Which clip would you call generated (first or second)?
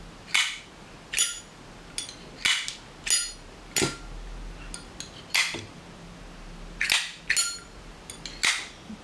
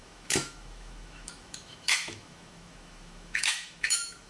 second